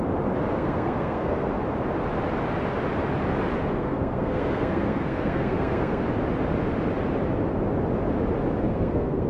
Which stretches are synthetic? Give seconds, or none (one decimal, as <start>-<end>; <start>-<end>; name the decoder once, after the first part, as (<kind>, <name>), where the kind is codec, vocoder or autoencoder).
0.5-1.5 (codec, SNAC); 3.7-6.0; 8.7-9.3